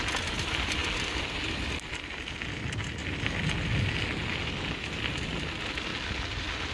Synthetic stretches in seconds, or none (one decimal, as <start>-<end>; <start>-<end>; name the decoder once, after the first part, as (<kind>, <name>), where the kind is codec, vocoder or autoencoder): none